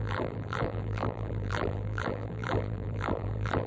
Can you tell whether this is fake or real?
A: fake